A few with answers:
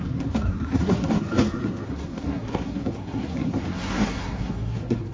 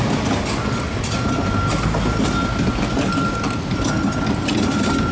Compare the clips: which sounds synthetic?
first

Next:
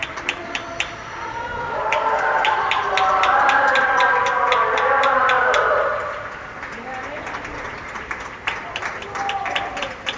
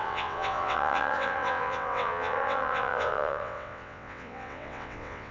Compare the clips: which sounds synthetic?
second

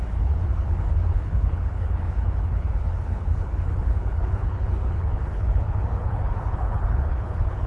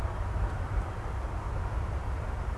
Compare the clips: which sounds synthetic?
first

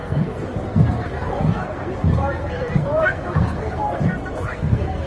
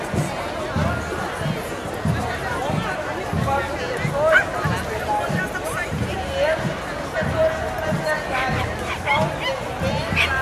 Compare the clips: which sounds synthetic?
first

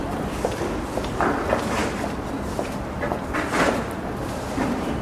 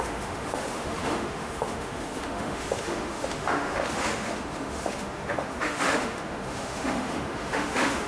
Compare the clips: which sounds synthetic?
second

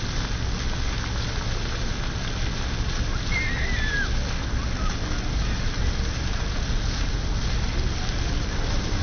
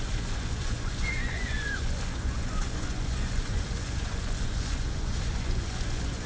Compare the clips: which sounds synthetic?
second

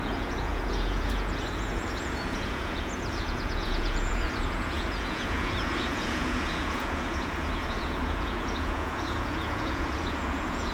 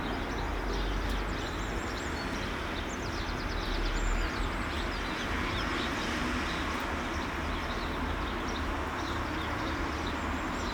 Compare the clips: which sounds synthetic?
first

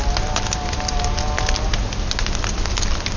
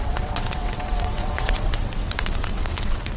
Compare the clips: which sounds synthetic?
second